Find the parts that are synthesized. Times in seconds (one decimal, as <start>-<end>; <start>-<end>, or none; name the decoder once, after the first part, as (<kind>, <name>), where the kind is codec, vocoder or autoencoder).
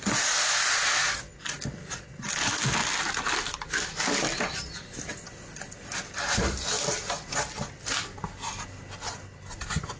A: none